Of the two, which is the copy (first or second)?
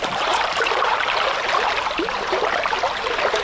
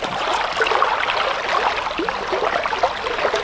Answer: first